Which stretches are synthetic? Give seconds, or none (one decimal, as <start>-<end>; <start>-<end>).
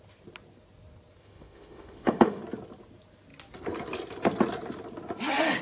1.2-2.4